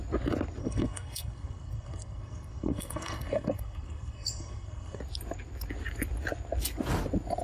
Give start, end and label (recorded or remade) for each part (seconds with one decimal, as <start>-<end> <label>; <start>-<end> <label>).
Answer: 0.0-0.6 recorded; 0.6-5.0 remade; 5.0-7.4 recorded